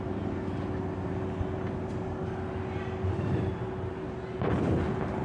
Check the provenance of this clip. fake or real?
real